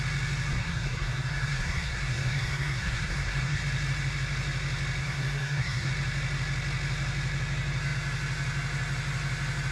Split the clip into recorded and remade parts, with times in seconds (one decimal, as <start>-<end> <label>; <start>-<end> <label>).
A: 0.0-0.6 recorded; 0.6-3.6 remade; 3.6-5.0 recorded; 5.0-5.9 remade; 5.9-9.7 recorded